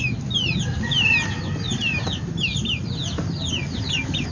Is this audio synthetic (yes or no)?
no